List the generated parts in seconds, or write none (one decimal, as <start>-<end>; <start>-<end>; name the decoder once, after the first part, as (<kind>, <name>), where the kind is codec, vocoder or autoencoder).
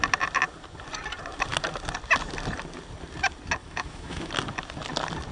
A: 3.6-4.3 (autoencoder, DAC-VAE)